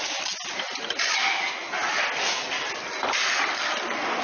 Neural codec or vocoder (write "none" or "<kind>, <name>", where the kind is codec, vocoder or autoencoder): none